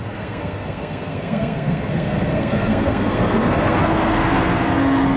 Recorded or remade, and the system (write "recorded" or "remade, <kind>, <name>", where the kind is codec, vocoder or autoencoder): remade, codec, SNAC